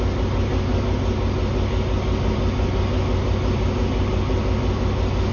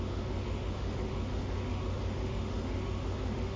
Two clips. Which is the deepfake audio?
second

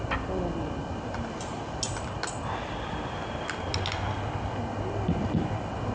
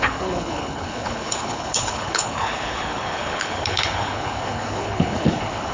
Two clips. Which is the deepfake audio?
second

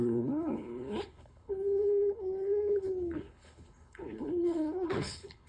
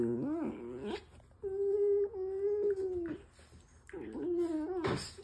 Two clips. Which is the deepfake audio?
first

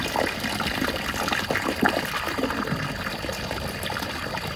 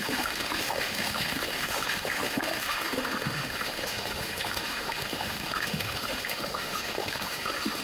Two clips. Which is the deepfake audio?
second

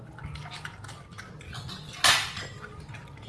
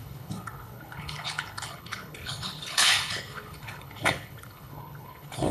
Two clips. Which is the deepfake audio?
second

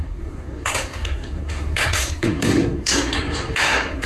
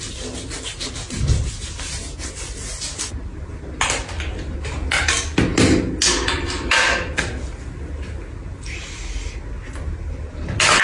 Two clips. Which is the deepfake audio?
first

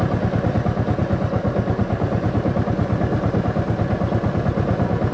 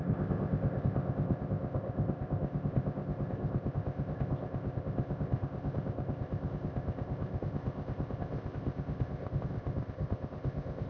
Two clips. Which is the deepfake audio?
second